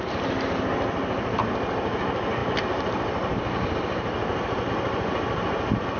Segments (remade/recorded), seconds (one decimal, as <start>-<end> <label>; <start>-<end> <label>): 0.0-6.0 recorded